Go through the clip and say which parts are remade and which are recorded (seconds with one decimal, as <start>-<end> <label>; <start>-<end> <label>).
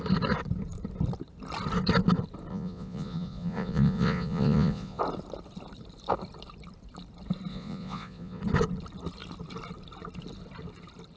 0.0-2.5 recorded; 2.5-5.0 remade; 5.0-7.5 recorded; 7.5-8.4 remade; 8.4-11.2 recorded